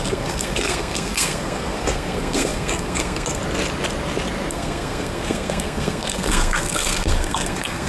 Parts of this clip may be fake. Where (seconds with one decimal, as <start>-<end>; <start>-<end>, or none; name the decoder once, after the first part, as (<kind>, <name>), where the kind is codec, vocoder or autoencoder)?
0.0-3.4 (codec, SNAC); 4.5-7.9